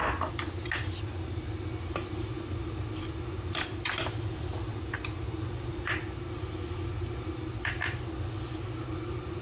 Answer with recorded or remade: recorded